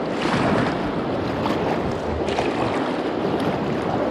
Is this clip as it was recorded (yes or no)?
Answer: yes